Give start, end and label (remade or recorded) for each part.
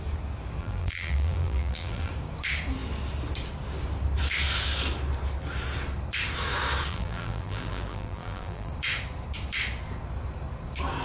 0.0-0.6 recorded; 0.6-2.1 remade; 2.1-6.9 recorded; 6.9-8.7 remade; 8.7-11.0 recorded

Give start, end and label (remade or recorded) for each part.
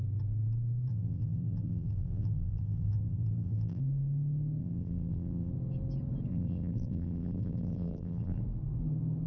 0.0-0.9 recorded; 0.9-3.8 remade; 3.8-4.6 recorded; 4.6-5.5 remade; 5.5-6.3 recorded; 6.3-8.4 remade; 8.4-9.3 recorded